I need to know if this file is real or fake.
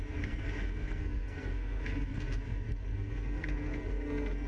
fake